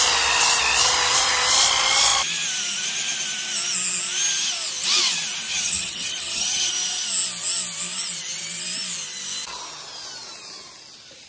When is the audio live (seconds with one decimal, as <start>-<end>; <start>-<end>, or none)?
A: 0.0-5.5; 6.7-11.3